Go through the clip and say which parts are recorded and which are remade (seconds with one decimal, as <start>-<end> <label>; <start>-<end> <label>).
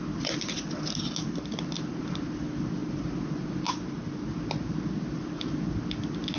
0.0-6.4 recorded